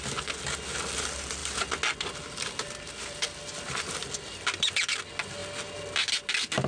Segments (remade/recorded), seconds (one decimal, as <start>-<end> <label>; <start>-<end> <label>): 0.0-6.7 recorded